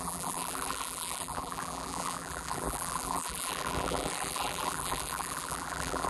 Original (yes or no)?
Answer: no